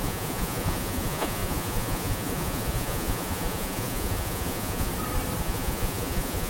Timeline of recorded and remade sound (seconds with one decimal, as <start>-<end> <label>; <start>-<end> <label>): 0.0-4.9 remade; 4.9-5.4 recorded; 5.4-6.5 remade